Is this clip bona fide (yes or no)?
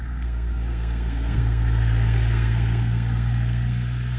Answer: no